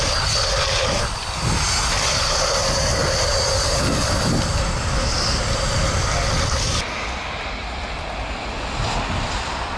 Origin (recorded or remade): recorded